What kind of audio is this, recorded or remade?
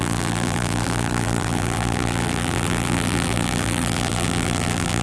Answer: remade